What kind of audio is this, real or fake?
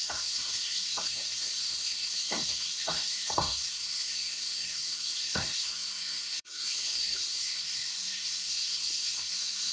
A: fake